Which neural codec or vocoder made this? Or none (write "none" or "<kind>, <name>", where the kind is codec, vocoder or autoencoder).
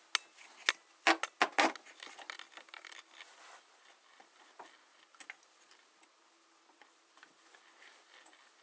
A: none